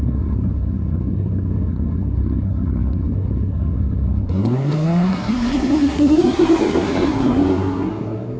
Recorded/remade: remade